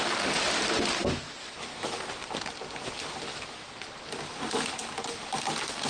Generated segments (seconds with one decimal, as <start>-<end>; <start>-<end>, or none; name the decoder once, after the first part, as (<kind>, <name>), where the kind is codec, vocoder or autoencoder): 1.4-2.0 (autoencoder, DAC-VAE); 3.3-3.8